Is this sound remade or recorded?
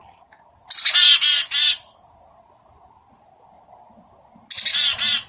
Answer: recorded